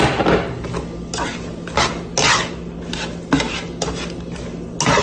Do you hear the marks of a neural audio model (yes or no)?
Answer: no